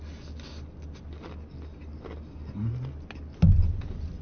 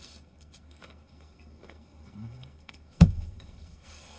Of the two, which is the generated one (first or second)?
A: second